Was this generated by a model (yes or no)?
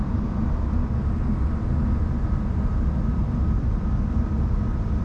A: no